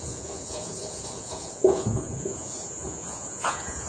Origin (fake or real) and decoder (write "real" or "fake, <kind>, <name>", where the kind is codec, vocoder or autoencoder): fake, vocoder, Vocos